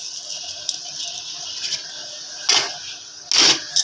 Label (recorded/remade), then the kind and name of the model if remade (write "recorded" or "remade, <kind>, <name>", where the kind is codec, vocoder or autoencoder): recorded